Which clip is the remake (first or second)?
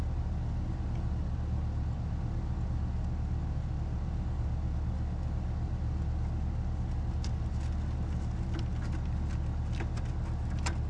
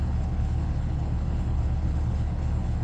second